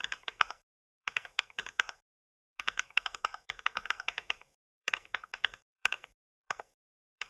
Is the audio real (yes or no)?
no